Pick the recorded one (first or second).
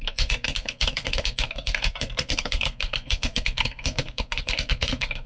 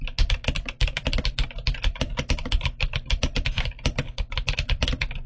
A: second